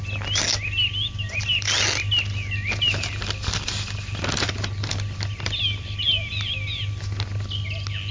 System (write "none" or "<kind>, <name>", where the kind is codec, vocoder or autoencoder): none